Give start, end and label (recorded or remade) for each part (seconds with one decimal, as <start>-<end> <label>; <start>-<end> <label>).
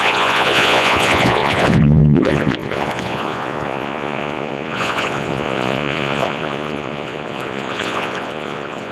0.0-8.9 remade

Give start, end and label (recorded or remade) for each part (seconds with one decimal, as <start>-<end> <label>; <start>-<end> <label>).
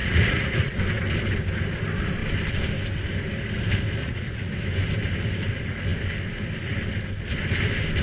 0.0-0.8 remade; 0.8-4.0 recorded; 4.0-4.5 remade; 4.5-8.0 recorded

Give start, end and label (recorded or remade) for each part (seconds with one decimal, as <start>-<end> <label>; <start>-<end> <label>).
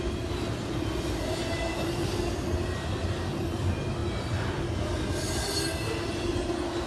0.0-6.9 recorded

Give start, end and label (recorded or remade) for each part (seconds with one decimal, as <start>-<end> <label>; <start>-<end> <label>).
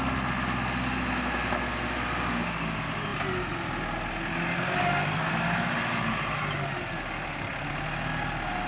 0.0-8.7 recorded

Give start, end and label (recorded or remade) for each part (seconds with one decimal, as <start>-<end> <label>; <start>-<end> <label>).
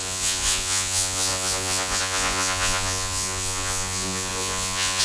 0.0-5.0 remade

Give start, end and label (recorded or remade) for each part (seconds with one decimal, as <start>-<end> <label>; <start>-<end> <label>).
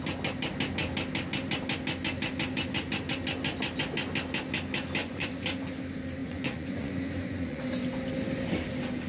0.0-5.0 recorded; 5.0-5.6 remade; 5.6-6.2 recorded; 6.2-7.6 remade; 7.6-9.1 recorded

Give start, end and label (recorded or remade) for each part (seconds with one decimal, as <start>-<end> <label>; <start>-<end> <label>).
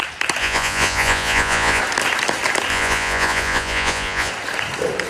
0.0-0.4 recorded; 0.4-1.8 remade; 1.8-2.7 recorded; 2.7-4.3 remade; 4.3-5.1 recorded